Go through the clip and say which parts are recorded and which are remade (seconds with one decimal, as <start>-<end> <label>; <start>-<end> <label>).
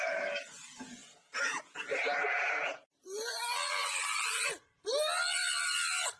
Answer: 0.0-6.2 recorded